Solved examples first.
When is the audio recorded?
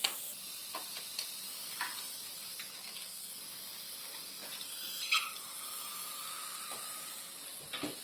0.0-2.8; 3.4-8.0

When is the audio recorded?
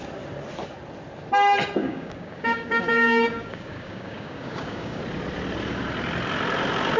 0.0-1.8; 5.0-7.0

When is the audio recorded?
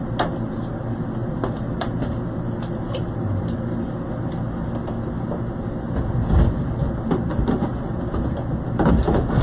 0.0-9.4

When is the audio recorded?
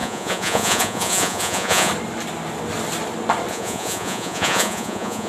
1.9-3.5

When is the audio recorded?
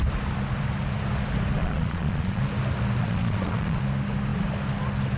0.0-1.6; 2.4-3.0; 3.8-5.2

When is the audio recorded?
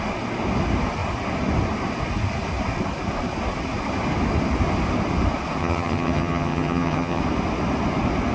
0.0-5.6; 7.2-8.3